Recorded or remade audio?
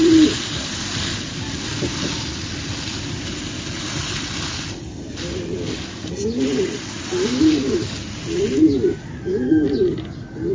recorded